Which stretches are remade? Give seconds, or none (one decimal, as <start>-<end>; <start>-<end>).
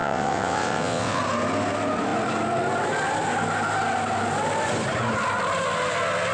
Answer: 0.0-1.2